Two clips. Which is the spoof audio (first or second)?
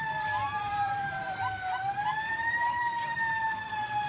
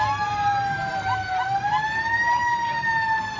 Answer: first